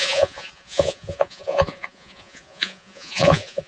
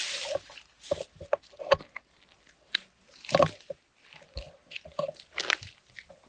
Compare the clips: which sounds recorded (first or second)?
second